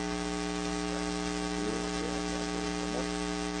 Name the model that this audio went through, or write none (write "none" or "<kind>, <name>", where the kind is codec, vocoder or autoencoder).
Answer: autoencoder, DAC-VAE